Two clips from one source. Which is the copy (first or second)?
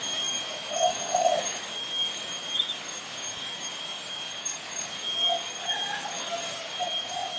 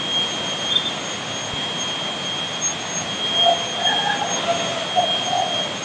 first